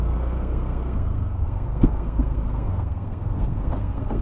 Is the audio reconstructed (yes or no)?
yes